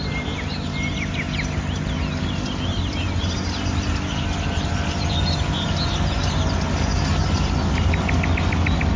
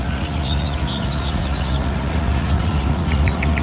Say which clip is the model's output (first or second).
second